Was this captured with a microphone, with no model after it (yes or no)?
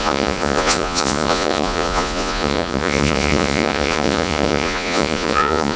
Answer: no